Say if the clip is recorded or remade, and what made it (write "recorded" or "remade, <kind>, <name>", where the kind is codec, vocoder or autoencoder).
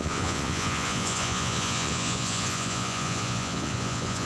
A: remade, vocoder, Vocos